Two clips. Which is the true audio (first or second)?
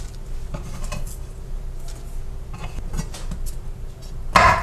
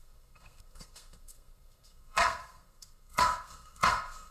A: first